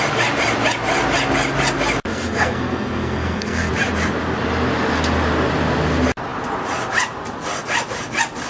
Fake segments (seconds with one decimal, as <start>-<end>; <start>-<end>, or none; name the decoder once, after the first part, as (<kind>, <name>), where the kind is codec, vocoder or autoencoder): 2.1-3.7 (codec, SNAC)